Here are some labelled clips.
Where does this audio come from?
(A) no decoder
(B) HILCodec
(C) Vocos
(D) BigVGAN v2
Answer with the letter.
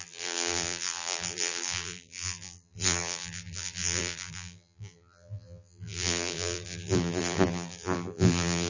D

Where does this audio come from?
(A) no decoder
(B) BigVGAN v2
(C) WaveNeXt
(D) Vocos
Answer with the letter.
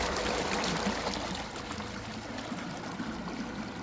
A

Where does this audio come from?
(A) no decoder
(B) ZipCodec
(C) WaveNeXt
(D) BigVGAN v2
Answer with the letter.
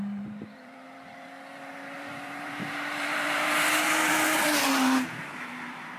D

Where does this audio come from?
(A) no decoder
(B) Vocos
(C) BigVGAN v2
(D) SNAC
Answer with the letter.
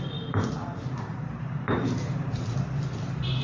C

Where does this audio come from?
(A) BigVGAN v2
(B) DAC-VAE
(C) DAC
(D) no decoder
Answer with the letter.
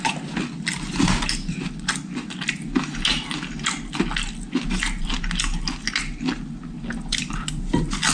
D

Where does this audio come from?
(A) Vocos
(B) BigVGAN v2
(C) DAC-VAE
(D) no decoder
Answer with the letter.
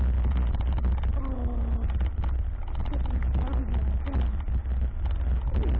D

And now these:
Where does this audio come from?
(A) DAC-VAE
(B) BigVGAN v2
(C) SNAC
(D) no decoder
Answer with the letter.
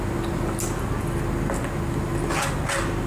D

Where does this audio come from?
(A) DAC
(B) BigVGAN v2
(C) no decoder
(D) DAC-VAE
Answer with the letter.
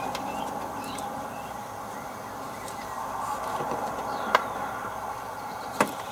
C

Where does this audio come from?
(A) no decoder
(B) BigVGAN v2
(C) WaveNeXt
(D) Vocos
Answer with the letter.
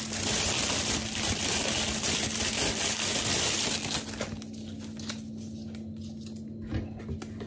A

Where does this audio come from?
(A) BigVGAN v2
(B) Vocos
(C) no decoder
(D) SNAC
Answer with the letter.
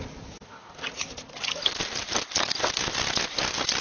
C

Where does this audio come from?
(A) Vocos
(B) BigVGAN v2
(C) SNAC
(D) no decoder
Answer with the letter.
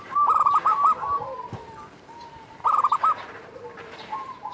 B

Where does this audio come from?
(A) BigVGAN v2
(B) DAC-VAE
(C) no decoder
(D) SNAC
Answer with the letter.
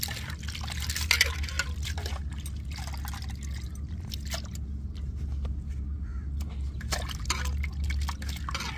C